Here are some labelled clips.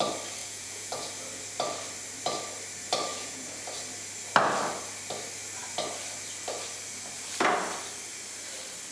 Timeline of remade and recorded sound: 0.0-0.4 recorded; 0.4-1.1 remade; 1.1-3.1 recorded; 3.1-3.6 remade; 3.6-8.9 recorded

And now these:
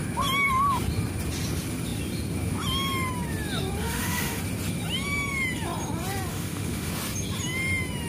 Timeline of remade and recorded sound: 0.0-3.8 recorded; 3.8-4.4 remade; 4.4-6.3 recorded; 6.3-6.9 remade; 6.9-8.1 recorded